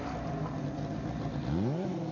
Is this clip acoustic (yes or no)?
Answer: yes